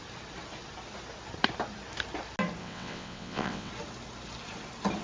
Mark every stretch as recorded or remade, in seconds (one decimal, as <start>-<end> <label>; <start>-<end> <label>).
0.0-2.6 recorded; 2.6-3.7 remade; 3.7-5.0 recorded